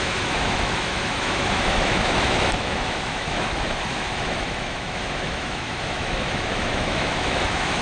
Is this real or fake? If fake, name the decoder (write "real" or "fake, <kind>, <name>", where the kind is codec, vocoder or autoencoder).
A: fake, autoencoder, DAC-VAE